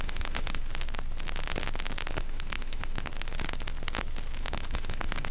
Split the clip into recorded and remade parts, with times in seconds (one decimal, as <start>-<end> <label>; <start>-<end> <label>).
0.0-0.6 remade; 0.6-2.2 recorded; 2.2-3.1 remade; 3.1-4.4 recorded; 4.4-5.3 remade